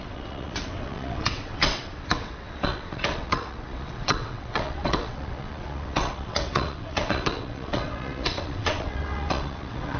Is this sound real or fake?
fake